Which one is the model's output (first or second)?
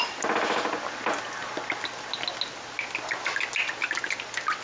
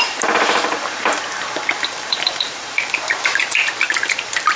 second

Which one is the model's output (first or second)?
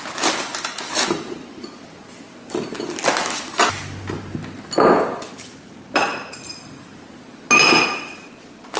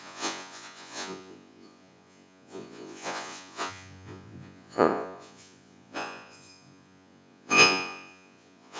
second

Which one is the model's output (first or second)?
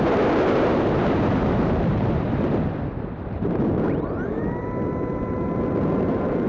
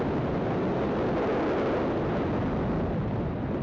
first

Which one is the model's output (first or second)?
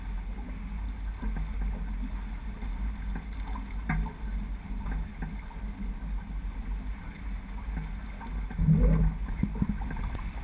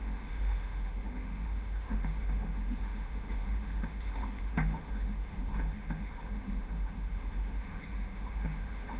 second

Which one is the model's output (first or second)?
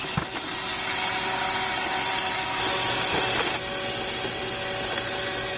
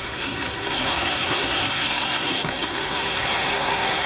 second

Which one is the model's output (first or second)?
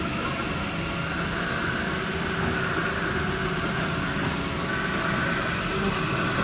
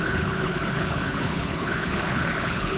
second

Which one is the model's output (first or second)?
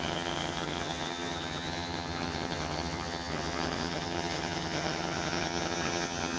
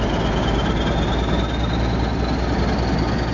first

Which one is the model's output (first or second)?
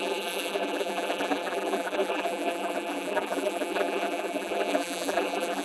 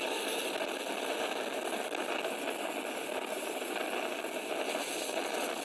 first